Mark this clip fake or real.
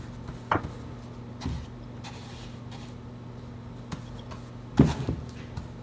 real